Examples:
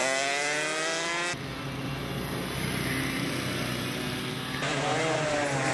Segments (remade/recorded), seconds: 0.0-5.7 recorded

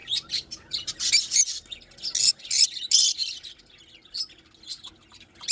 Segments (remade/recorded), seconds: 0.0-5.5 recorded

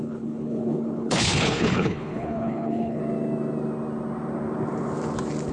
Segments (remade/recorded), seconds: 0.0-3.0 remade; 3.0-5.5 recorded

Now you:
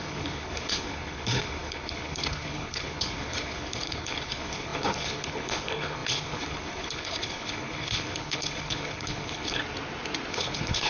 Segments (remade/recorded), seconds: 0.0-9.6 remade; 9.6-10.3 recorded; 10.3-10.9 remade

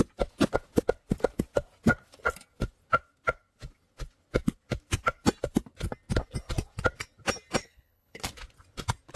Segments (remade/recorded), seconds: 0.0-7.6 recorded; 7.6-8.2 remade; 8.2-9.2 recorded

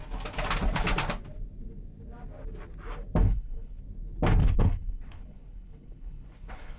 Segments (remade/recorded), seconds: 0.0-3.2 recorded; 3.2-3.8 remade; 3.8-4.4 recorded; 4.4-6.8 remade

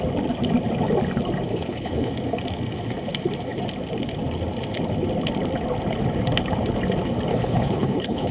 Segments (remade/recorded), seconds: 0.0-1.5 recorded; 1.5-2.1 remade; 2.1-7.3 recorded; 7.3-8.3 remade